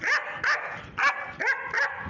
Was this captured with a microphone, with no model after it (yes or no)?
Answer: yes